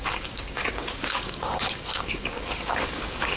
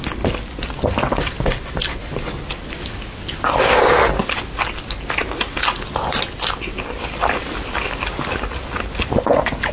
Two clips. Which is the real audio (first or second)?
second